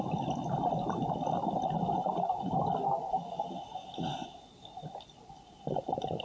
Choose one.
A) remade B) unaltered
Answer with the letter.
B